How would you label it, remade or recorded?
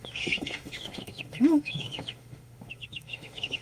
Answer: remade